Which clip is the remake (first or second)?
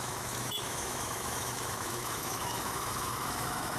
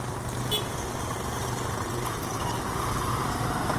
first